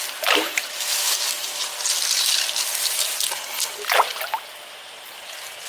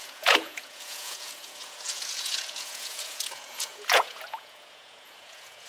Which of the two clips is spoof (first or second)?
second